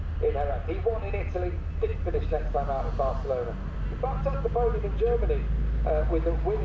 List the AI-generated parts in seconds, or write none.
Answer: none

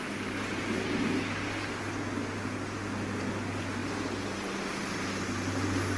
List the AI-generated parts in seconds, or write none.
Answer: none

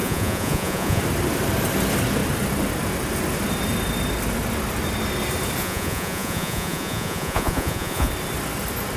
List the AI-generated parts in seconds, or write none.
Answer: 0.0-1.0 (vocoder, Vocos); 5.6-8.1

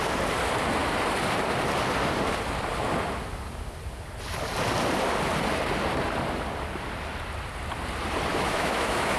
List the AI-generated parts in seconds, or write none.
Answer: 8.3-9.2 (autoencoder, DAC-VAE)

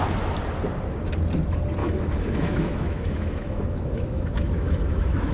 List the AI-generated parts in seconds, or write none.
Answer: 1.8-5.3 (autoencoder, DAC-VAE)

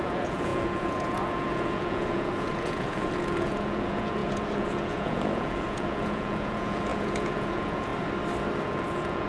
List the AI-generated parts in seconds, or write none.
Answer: 0.0-7.9 (vocoder, Vocos); 8.6-9.3